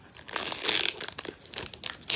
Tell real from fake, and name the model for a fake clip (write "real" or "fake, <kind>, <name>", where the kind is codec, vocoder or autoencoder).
real